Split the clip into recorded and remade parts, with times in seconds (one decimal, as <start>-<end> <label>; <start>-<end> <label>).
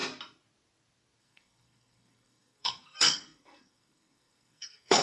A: 0.0-1.2 recorded; 1.2-5.0 remade